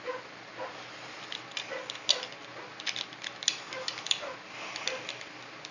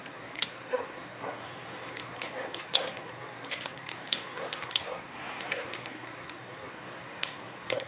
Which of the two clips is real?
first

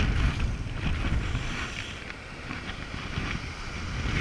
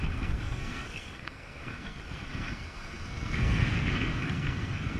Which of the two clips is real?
first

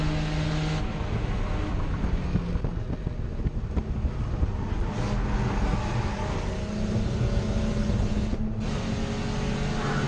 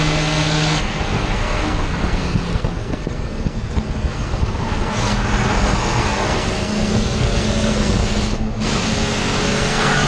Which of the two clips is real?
first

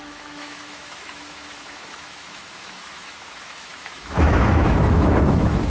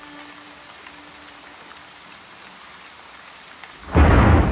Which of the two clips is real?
second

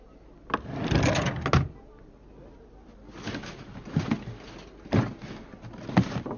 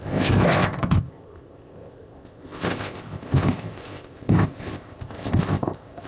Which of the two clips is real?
first